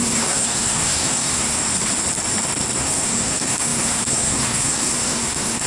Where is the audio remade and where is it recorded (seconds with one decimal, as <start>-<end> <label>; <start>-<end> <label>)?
0.0-1.6 remade; 1.6-2.8 recorded; 2.8-5.7 remade